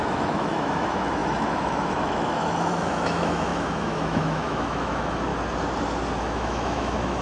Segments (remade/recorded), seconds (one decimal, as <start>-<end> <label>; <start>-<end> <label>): 0.0-5.3 remade; 5.3-6.2 recorded; 6.2-7.2 remade